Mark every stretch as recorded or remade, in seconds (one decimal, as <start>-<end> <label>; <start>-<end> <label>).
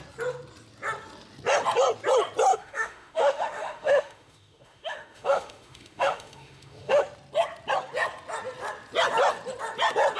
0.0-2.5 recorded; 2.5-7.0 remade; 7.0-10.2 recorded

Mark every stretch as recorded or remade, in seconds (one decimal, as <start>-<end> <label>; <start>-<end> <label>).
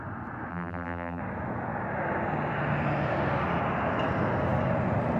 0.0-0.5 recorded; 0.5-1.2 remade; 1.2-5.2 recorded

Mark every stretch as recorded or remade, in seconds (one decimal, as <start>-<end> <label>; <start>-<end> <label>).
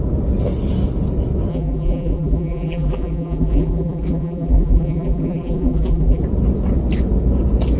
0.0-1.5 recorded; 1.5-6.2 remade; 6.2-7.8 recorded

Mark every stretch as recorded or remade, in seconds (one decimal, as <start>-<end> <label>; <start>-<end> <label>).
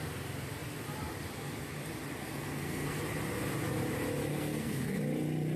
0.0-2.2 recorded; 2.2-3.0 remade; 3.0-4.3 recorded; 4.3-5.0 remade; 5.0-5.6 recorded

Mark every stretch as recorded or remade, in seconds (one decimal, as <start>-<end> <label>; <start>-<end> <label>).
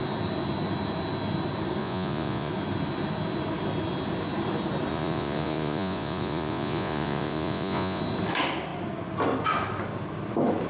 0.0-1.8 recorded; 1.8-2.5 remade; 2.5-4.9 recorded; 4.9-8.0 remade; 8.0-10.7 recorded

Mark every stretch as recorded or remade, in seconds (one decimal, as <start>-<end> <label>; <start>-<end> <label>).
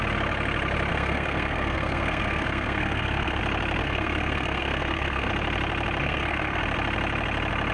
0.0-0.9 recorded; 0.9-3.4 remade; 3.4-3.8 recorded; 3.8-5.3 remade; 5.3-6.0 recorded; 6.0-6.6 remade; 6.6-7.7 recorded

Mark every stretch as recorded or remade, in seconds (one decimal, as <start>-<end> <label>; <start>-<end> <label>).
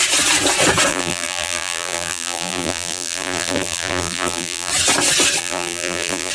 0.0-0.9 recorded; 0.9-4.7 remade; 4.7-5.4 recorded; 5.4-6.3 remade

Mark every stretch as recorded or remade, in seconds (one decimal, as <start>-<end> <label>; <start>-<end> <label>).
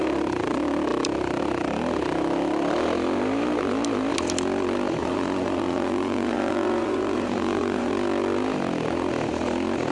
0.0-5.0 recorded; 5.0-7.9 remade; 7.9-9.9 recorded